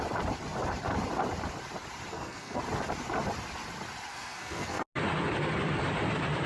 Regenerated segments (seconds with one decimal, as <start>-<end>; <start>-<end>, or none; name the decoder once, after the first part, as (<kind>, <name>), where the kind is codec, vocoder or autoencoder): 2.1-2.6 (codec, SNAC); 4.1-4.8